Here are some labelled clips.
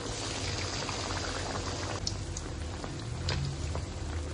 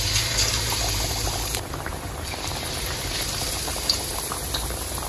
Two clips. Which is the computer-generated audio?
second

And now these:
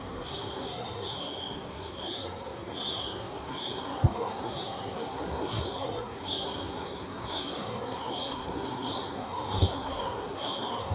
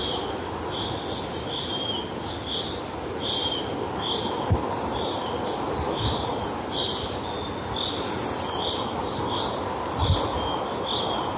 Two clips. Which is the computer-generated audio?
first